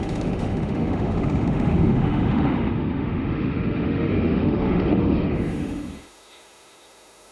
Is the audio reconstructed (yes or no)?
yes